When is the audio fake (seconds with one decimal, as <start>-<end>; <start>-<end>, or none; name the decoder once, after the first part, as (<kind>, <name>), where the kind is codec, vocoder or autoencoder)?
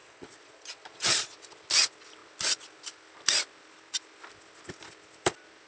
0.0-1.4 (vocoder, Vocos)